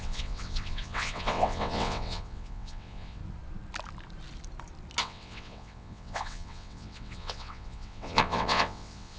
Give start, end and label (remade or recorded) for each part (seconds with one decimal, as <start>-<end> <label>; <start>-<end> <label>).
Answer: 0.0-3.2 remade; 3.2-5.0 recorded; 5.0-9.2 remade